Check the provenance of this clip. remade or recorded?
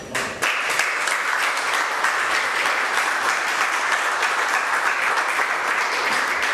recorded